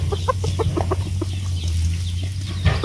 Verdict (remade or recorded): recorded